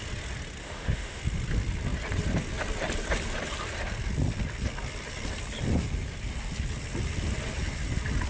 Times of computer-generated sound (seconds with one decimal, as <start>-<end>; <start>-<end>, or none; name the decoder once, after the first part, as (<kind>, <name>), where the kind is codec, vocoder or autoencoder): 0.6-1.2 (autoencoder, DAC-VAE)